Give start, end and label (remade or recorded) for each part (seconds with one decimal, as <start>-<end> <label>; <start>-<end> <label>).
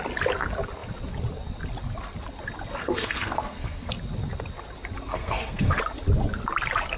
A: 0.0-2.8 recorded; 2.8-3.9 remade; 3.9-5.1 recorded; 5.1-5.8 remade; 5.8-7.0 recorded